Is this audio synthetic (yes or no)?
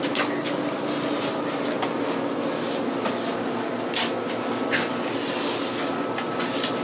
no